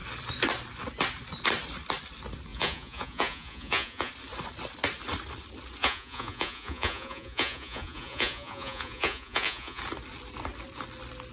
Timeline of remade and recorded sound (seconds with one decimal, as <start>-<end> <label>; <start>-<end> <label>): 0.0-2.5 recorded; 2.5-4.1 remade; 4.1-5.8 recorded; 5.8-9.8 remade; 9.8-11.3 recorded